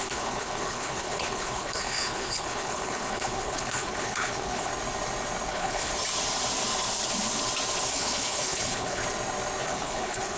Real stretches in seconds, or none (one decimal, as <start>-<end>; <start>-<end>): 4.7-5.5; 5.9-7.9; 9.0-9.6